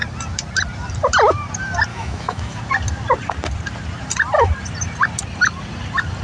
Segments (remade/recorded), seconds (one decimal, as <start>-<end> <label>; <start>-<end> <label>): 0.0-1.9 recorded; 1.9-2.6 remade; 2.6-6.2 recorded